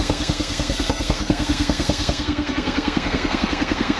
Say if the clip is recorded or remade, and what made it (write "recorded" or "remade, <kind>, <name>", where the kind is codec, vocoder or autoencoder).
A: remade, codec, SNAC